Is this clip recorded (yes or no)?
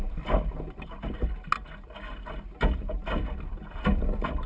yes